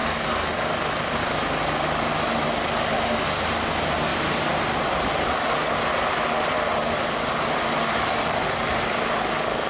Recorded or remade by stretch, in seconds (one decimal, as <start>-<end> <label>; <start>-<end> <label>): 0.0-9.7 recorded